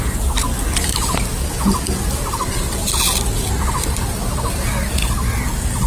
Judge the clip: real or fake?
real